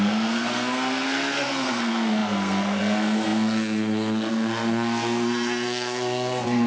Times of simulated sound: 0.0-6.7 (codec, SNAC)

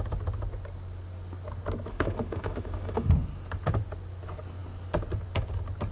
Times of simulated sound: 1.9-3.1 (autoencoder, DAC-VAE)

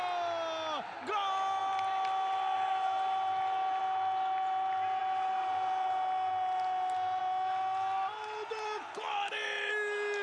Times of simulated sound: none

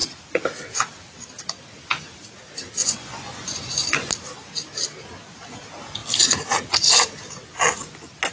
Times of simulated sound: 2.8-4.1 (vocoder, Vocos)

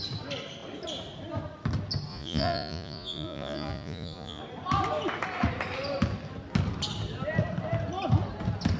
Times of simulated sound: 2.1-4.4 (vocoder, Vocos)

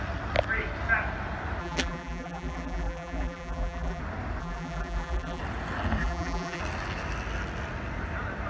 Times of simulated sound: 1.6-4.0 (vocoder, BigVGAN v2); 4.4-5.4; 6.0-6.6

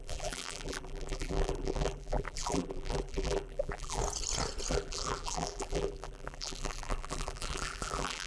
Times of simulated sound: 0.0-4.0 (vocoder, BigVGAN v2); 4.7-8.3